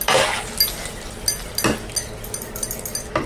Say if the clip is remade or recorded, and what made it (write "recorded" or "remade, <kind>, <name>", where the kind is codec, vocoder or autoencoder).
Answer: recorded